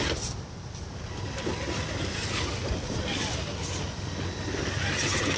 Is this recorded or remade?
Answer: recorded